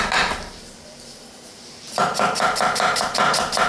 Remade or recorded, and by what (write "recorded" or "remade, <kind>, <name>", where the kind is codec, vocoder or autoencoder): remade, vocoder, BigVGAN v2